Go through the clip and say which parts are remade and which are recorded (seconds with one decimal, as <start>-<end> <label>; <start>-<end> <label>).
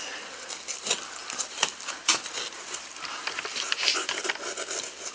0.0-5.1 recorded